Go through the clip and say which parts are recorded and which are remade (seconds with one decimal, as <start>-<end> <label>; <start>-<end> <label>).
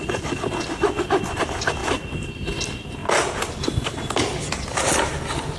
0.0-5.6 recorded